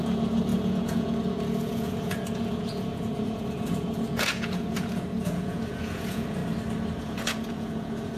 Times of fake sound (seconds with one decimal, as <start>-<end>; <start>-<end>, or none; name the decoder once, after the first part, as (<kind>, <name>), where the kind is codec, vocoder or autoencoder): 0.0-6.4 (vocoder, Vocos); 7.0-8.2